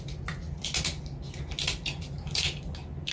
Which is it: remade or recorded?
recorded